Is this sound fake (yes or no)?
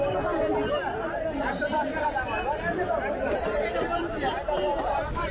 yes